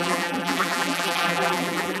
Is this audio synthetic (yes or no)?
yes